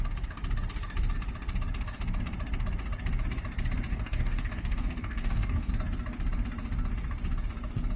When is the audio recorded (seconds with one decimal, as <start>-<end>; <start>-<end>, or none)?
0.0-3.9; 5.7-8.0